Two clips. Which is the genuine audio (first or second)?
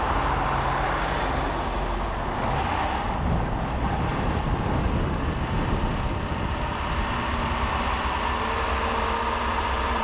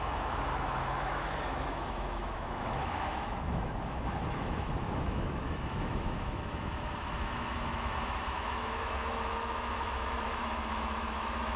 first